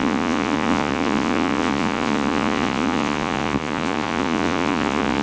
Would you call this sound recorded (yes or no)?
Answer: no